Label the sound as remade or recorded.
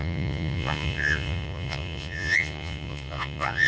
remade